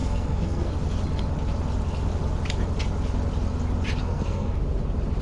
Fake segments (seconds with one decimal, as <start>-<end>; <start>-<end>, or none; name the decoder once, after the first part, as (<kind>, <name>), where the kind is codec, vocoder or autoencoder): 0.0-0.7 (codec, SNAC); 4.0-4.6

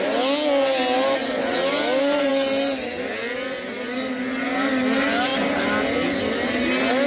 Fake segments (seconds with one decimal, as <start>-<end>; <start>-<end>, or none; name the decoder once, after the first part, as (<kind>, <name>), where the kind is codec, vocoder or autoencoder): none

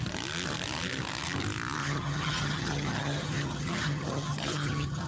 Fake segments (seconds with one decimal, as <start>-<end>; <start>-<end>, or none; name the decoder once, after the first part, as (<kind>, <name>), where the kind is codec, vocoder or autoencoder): 1.8-5.1 (vocoder, HiFi-GAN)

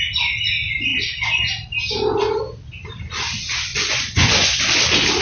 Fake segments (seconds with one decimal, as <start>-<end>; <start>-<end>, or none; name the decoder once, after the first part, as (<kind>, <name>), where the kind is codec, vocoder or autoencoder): 3.7-4.6 (vocoder, Vocos)

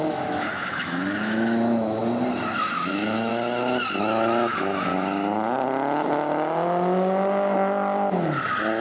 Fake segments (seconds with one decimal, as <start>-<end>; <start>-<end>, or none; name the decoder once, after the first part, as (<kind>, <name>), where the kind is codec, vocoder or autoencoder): 0.0-2.0 (autoencoder, DAC-VAE); 2.9-3.3; 4.0-4.9

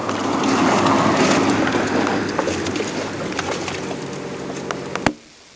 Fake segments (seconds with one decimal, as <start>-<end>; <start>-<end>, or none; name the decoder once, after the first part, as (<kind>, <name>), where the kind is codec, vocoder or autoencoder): none

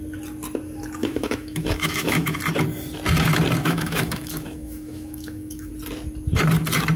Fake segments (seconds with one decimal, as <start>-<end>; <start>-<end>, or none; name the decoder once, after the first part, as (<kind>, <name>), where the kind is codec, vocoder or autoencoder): 1.0-2.4 (autoencoder, DAC-VAE); 3.6-5.7

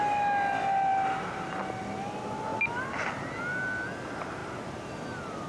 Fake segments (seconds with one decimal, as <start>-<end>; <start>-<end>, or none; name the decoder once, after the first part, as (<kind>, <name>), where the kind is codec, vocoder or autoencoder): none